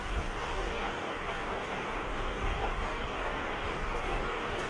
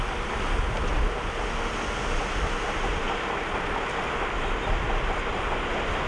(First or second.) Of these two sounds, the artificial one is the first